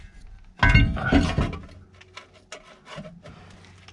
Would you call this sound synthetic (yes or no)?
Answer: no